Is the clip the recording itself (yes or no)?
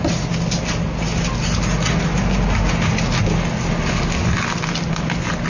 yes